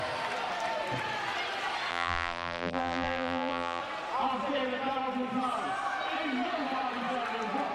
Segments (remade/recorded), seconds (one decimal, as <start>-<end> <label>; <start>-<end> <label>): 0.0-1.9 recorded; 1.9-3.8 remade; 3.8-7.7 recorded

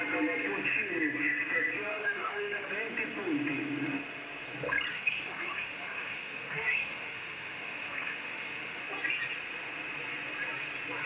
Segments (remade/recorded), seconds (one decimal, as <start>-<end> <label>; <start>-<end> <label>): 0.0-1.9 recorded; 1.9-2.7 remade; 2.7-4.9 recorded; 4.9-8.8 remade; 8.8-11.1 recorded

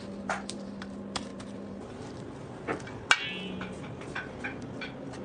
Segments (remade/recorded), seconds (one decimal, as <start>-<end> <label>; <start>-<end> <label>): 0.0-5.2 recorded

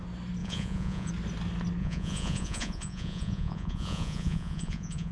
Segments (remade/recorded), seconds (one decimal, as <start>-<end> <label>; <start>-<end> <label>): 0.0-0.4 recorded; 0.4-1.1 remade; 1.1-1.8 recorded; 1.8-5.1 remade

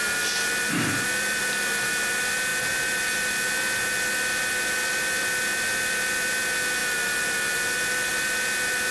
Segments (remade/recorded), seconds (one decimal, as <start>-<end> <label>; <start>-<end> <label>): 0.0-8.9 recorded

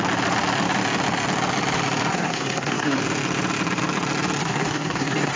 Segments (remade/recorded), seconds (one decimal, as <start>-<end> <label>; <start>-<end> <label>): 0.0-2.1 recorded; 2.1-3.0 remade; 3.0-4.4 recorded; 4.4-5.4 remade

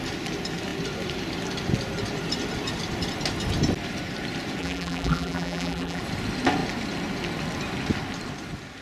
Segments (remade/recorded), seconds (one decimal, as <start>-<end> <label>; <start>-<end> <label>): 0.0-4.6 recorded; 4.6-6.0 remade; 6.0-8.8 recorded

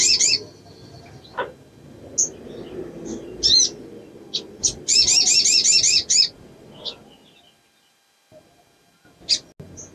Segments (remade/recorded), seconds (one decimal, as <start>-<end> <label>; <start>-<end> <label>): 0.0-9.9 recorded